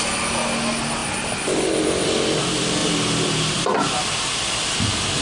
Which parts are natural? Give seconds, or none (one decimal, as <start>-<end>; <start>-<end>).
0.0-5.2